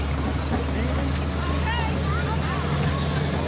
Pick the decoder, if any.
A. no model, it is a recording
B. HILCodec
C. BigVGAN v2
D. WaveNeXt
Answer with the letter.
A